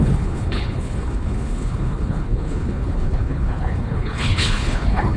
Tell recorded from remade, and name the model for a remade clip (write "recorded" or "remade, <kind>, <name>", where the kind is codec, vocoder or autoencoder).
remade, codec, HILCodec